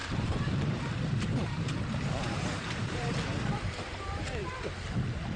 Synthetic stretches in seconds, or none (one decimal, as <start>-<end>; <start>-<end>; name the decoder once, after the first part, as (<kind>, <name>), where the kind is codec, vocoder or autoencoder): 0.0-3.1 (vocoder, BigVGAN v2)